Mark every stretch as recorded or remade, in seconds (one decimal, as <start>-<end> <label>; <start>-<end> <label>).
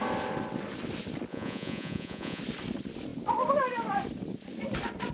0.0-1.3 recorded; 1.3-2.4 remade; 2.4-5.1 recorded